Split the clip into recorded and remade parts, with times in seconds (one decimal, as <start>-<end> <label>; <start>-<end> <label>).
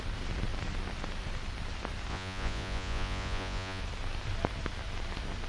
0.0-2.1 recorded; 2.1-3.8 remade; 3.8-5.5 recorded